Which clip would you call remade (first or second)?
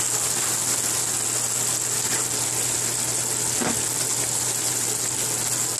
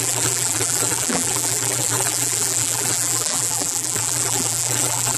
second